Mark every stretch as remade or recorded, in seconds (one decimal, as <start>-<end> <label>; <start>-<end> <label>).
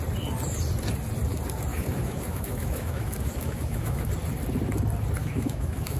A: 0.0-1.7 recorded; 1.7-4.1 remade; 4.1-5.2 recorded; 5.2-6.0 remade